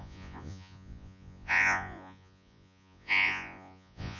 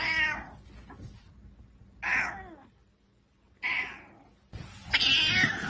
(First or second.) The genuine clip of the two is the second